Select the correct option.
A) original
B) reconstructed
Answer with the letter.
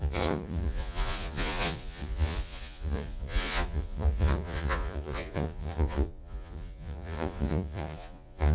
B